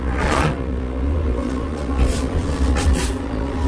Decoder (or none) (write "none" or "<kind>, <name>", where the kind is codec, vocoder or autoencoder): vocoder, Vocos